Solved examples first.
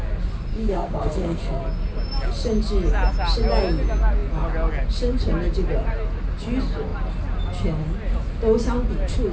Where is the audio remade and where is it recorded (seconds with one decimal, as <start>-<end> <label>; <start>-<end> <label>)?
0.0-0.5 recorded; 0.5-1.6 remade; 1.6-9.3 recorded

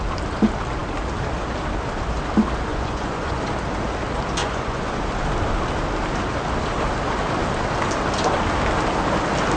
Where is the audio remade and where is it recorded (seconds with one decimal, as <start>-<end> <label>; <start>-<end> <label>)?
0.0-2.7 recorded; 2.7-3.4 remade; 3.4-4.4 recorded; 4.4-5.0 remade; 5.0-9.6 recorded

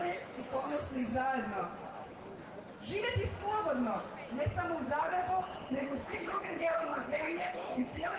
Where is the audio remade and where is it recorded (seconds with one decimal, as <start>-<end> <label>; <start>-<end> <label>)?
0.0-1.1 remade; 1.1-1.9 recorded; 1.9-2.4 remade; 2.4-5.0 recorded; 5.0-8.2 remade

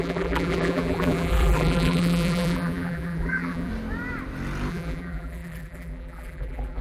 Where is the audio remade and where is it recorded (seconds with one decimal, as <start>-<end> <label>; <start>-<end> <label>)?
0.0-3.7 remade; 3.7-4.7 recorded; 4.7-6.8 remade